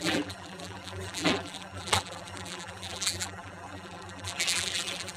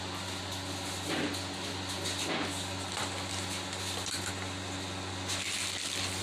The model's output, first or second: first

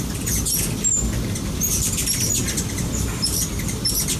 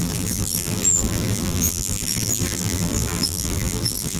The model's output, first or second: second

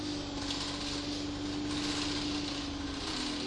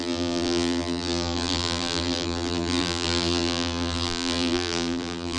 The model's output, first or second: second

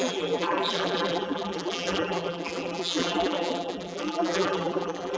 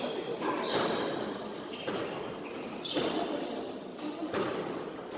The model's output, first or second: first